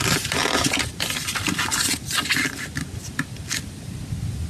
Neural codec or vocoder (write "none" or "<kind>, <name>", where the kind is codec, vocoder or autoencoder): none